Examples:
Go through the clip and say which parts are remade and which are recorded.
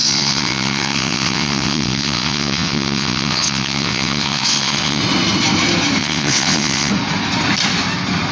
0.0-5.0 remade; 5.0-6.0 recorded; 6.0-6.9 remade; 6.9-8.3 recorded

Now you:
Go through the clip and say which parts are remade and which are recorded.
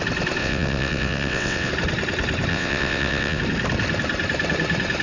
0.0-0.4 recorded; 0.4-1.7 remade; 1.7-2.5 recorded; 2.5-3.4 remade; 3.4-5.0 recorded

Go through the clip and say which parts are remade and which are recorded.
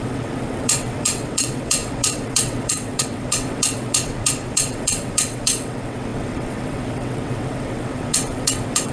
0.0-8.9 remade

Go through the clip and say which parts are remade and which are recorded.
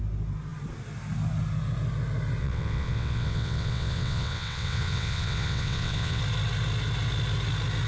0.0-2.4 recorded; 2.4-6.2 remade; 6.2-7.9 recorded